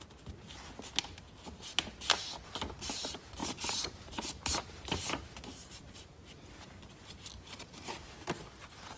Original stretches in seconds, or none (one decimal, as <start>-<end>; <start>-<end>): 0.0-3.4; 4.6-9.0